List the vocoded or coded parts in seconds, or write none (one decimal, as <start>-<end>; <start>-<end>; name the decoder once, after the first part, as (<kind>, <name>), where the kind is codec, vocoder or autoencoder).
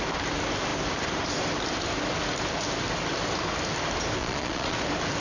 4.2-4.8 (vocoder, Vocos)